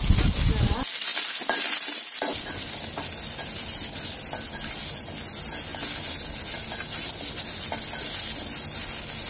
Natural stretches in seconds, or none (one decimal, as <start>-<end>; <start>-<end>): 0.0-1.1; 2.6-5.7; 7.1-9.3